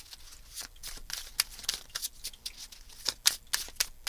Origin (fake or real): real